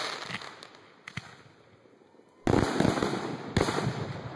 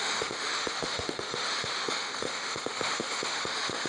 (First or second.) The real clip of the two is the first